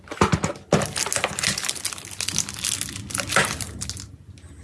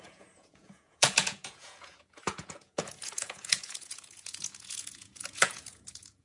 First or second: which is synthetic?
second